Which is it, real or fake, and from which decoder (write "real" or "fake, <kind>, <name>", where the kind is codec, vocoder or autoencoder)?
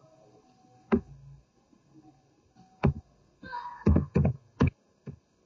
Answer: fake, codec, SNAC